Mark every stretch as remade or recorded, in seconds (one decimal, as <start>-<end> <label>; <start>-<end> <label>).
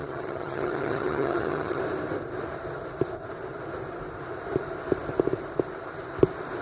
0.0-1.8 remade; 1.8-6.6 recorded